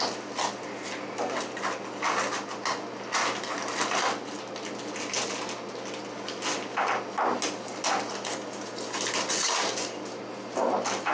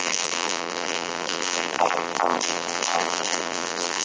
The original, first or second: first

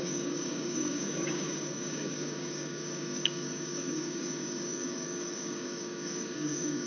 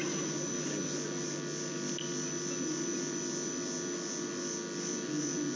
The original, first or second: second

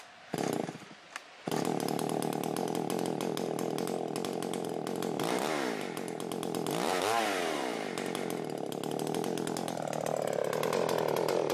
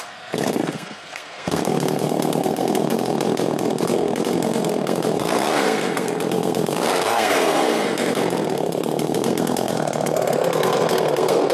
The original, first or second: first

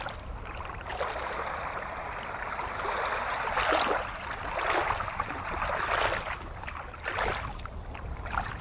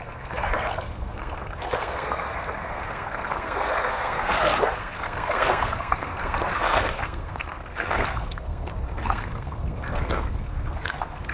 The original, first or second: first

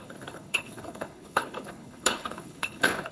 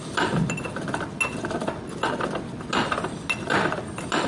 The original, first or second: second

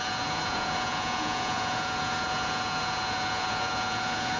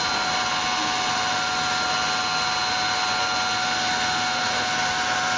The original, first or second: second